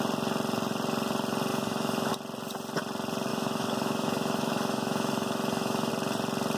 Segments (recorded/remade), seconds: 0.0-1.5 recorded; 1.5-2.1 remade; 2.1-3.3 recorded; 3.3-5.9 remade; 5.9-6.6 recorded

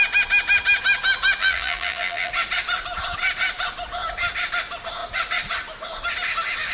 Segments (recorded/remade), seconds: 0.0-1.4 recorded; 1.4-2.3 remade; 2.3-6.7 recorded